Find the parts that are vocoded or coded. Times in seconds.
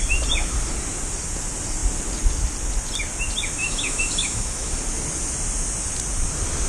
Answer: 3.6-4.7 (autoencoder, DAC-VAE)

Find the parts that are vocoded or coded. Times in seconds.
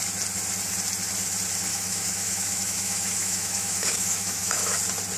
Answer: 1.7-4.8 (autoencoder, DAC-VAE)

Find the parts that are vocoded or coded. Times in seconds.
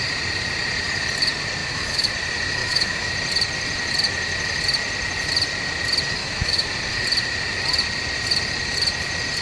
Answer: 1.6-2.1 (autoencoder, DAC-VAE); 2.6-3.1; 6.2-6.7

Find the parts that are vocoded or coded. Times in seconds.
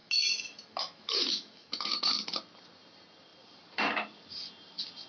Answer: 0.0-1.9 (autoencoder, DAC-VAE)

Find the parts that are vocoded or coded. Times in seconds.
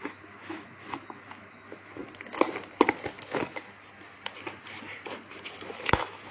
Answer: 0.0-2.0 (autoencoder, DAC-VAE); 5.6-6.3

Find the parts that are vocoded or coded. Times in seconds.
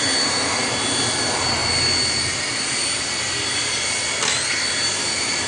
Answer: none